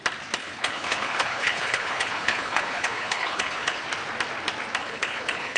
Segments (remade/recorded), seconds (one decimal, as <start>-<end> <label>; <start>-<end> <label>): 0.0-0.4 recorded; 0.4-3.8 remade; 3.8-4.8 recorded; 4.8-5.6 remade